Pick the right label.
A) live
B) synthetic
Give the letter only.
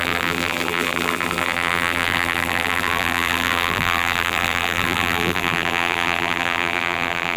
B